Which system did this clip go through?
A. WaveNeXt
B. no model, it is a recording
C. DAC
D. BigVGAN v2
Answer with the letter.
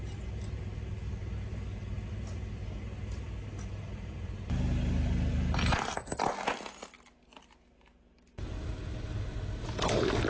B